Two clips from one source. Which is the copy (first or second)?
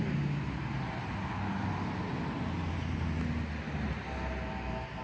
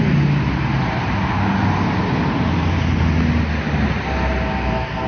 second